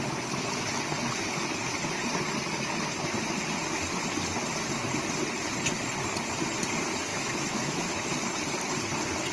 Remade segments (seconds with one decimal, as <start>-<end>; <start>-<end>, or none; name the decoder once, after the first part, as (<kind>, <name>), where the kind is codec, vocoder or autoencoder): 7.1-8.1 (autoencoder, DAC-VAE)

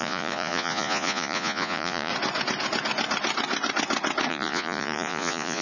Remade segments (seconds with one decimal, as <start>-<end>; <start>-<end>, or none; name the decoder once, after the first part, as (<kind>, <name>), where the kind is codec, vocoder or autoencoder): 0.0-2.1 (vocoder, Vocos); 4.3-5.6

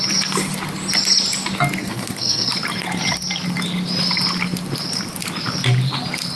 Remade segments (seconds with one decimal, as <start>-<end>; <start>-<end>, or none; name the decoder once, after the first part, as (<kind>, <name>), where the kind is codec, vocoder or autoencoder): 1.8-2.5 (codec, SNAC)

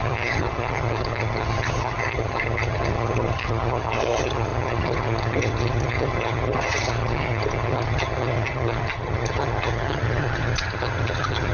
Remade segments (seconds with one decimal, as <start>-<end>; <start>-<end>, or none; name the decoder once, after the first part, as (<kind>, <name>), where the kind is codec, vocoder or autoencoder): 0.0-11.5 (vocoder, HiFi-GAN)

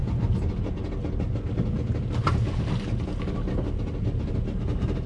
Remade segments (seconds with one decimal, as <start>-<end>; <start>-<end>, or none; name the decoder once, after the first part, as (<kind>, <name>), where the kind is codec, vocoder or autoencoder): none

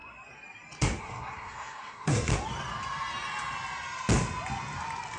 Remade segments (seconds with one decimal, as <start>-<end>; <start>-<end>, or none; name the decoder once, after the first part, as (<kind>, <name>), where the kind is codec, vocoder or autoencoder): 1.0-2.3 (codec, SNAC)

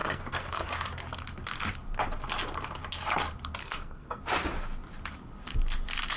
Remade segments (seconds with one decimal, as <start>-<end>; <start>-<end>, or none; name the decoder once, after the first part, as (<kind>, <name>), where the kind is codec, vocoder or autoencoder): 0.0-0.7 (codec, SNAC); 3.6-4.2